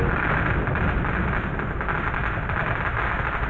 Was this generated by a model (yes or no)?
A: no